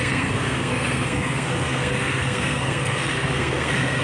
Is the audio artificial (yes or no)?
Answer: yes